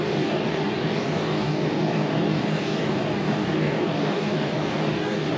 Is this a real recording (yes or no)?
no